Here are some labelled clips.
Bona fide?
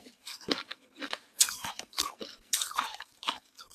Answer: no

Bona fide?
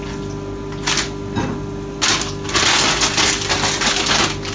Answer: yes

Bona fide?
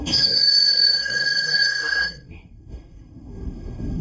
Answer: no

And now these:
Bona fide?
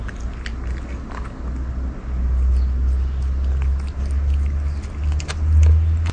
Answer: yes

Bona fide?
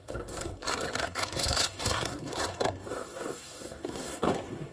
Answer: no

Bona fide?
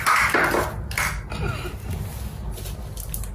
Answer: yes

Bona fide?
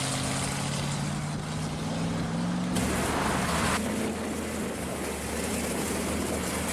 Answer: yes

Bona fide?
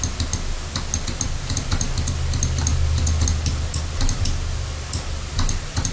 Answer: yes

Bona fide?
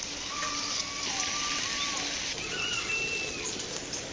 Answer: yes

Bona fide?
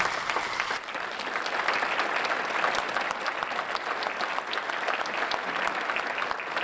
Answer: yes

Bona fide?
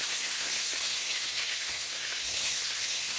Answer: no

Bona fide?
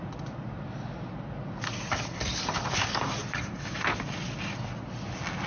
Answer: yes